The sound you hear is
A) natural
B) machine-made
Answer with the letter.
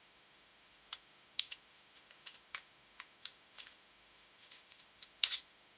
B